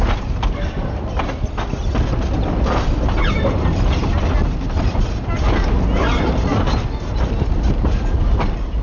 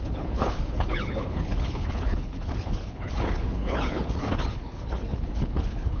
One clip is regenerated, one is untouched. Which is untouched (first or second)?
first